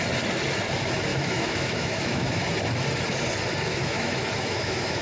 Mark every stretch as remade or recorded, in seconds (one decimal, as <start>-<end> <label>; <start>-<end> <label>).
0.0-1.1 recorded; 1.1-2.5 remade; 2.5-3.7 recorded; 3.7-5.0 remade